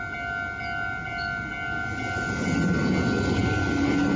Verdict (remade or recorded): recorded